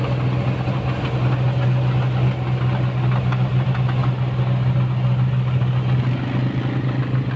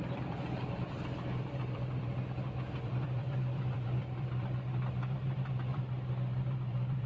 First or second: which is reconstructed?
second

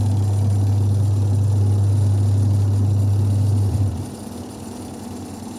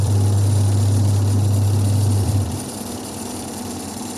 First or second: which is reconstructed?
second